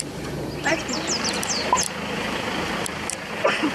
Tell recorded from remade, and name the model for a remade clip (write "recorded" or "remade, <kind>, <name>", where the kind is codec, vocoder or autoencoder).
recorded